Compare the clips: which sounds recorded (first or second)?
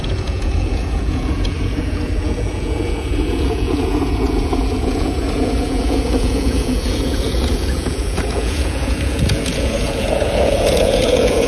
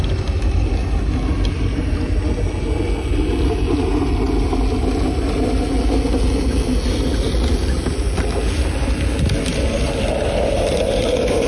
second